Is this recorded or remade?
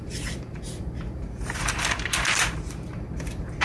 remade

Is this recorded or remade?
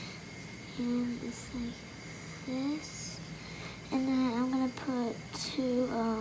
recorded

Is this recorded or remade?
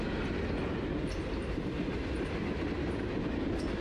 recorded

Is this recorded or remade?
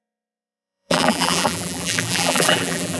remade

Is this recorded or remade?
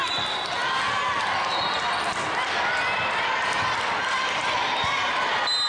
recorded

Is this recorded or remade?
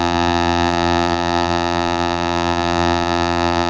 remade